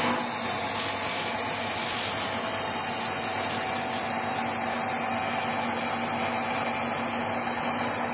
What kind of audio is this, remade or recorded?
recorded